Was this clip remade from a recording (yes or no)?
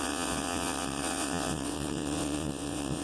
yes